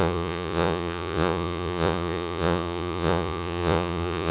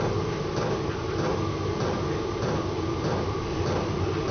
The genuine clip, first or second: second